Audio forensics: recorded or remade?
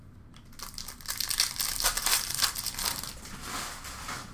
recorded